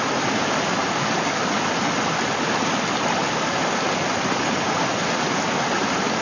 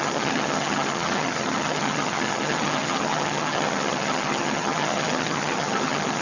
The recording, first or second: first